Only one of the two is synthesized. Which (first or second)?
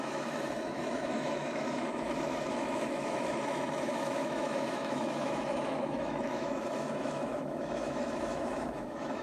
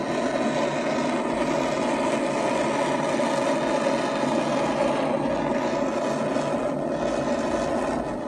first